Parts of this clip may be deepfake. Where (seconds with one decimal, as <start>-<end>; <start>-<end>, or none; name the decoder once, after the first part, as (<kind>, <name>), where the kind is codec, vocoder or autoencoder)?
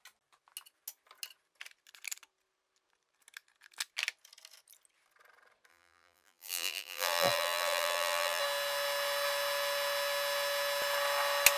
5.7-8.4 (vocoder, BigVGAN v2)